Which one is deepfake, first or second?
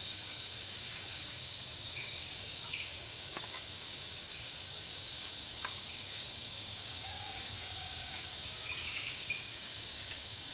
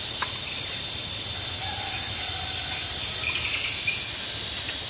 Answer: first